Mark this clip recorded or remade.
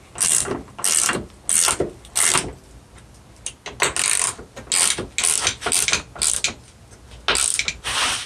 recorded